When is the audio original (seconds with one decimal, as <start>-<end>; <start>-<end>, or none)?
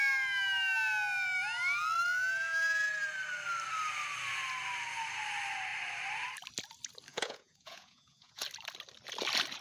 0.0-7.1; 8.4-9.6